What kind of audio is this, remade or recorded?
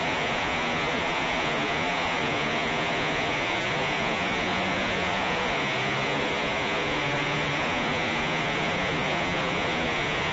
remade